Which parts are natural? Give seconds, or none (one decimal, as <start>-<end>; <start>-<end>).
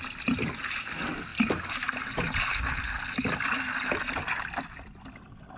0.0-5.6